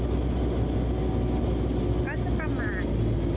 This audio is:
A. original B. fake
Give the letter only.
A